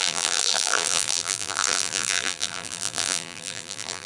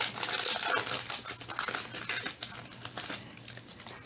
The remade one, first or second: first